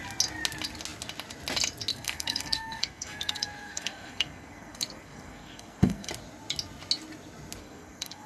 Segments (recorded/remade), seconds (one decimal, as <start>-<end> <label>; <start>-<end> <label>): 0.0-1.9 recorded; 1.9-6.1 remade; 6.1-7.6 recorded; 7.6-8.3 remade